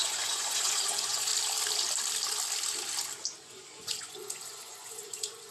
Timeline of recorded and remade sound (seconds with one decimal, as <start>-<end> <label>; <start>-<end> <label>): 0.0-1.3 remade; 1.3-3.4 recorded; 3.4-5.5 remade